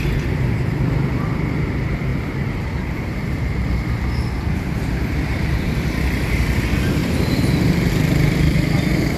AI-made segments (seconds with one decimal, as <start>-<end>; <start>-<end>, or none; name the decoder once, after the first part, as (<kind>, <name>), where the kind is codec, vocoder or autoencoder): 0.0-2.1 (vocoder, BigVGAN v2); 3.0-9.2